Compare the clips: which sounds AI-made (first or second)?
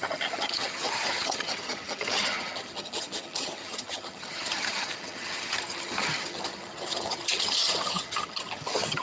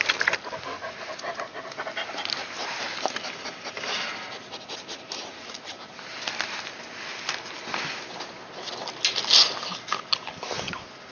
first